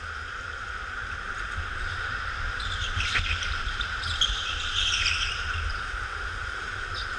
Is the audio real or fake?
real